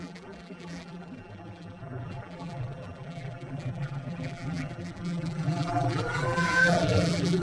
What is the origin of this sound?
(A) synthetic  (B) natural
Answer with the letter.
A